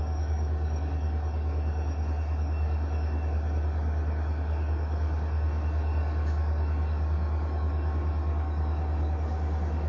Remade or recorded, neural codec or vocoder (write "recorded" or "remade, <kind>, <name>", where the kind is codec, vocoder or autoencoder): remade, codec, DAC